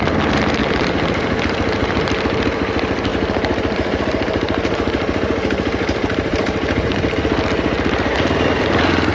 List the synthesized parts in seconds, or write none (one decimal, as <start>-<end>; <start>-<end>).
0.6-1.4; 3.1-6.9